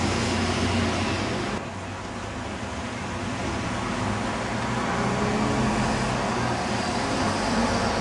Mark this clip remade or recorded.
recorded